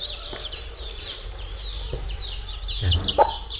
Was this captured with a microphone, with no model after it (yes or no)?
no